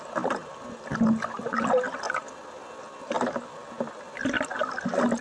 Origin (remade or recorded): recorded